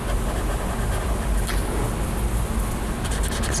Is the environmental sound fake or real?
real